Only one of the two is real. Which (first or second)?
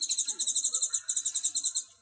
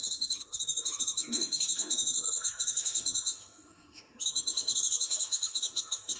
first